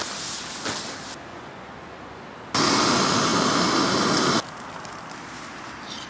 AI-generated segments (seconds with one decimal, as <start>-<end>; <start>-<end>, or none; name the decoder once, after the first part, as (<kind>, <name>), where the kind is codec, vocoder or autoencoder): 1.3-2.2 (vocoder, Vocos)